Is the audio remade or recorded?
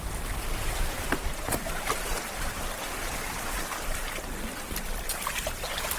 recorded